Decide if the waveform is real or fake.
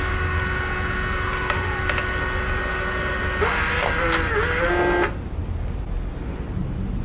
real